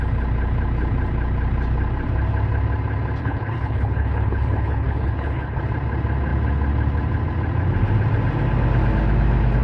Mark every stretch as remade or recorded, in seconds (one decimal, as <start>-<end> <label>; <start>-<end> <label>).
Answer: 0.0-3.2 recorded; 3.2-5.6 remade; 5.6-9.6 recorded